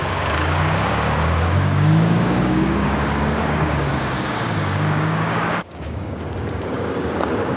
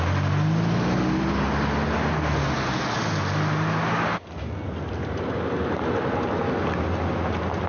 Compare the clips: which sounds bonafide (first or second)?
second